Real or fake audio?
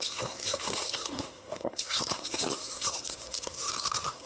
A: fake